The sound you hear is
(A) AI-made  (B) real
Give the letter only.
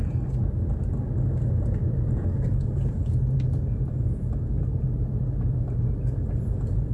B